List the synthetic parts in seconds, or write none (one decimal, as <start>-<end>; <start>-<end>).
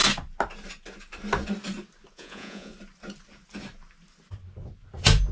2.1-2.7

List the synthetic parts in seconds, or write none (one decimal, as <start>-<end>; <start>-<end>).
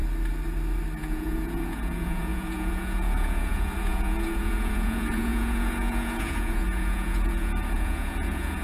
1.0-8.6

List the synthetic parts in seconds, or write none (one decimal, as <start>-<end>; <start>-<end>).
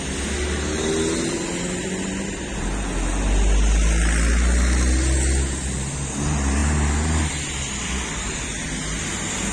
none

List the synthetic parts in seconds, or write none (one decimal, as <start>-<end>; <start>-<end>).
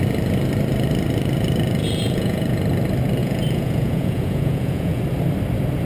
1.8-2.6; 3.2-5.0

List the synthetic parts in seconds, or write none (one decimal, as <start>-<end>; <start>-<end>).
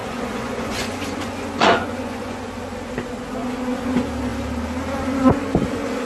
0.0-2.5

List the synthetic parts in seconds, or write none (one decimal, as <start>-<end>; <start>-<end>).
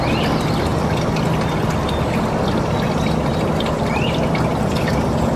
none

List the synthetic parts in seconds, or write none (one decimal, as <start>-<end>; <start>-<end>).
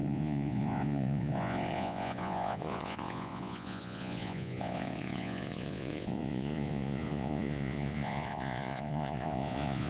0.0-9.9